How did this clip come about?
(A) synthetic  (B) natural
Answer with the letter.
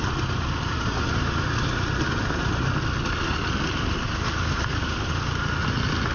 B